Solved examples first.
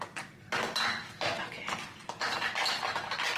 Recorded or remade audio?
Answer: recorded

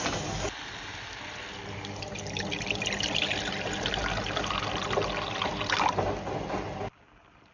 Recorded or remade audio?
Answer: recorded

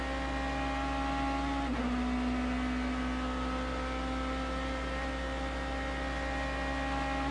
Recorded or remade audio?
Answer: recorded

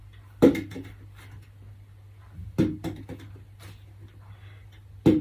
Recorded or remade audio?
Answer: recorded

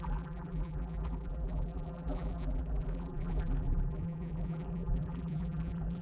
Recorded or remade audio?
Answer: remade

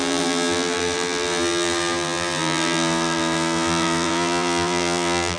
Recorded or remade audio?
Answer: remade